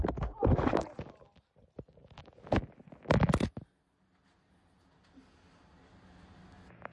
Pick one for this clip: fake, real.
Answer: real